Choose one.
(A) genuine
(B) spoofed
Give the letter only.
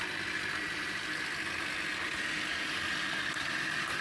A